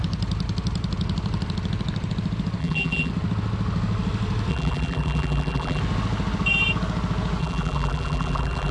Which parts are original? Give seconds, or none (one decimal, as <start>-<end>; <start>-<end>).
0.0-2.6; 3.1-4.5; 5.8-7.4